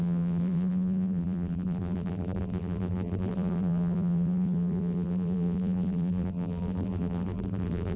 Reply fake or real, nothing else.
fake